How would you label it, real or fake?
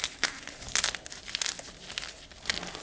real